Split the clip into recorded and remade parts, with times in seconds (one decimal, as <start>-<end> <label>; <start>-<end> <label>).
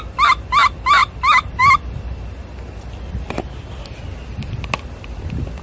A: 0.0-5.6 recorded